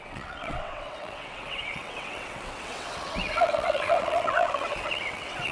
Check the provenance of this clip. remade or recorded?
remade